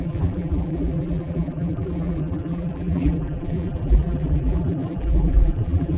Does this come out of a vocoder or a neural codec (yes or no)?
yes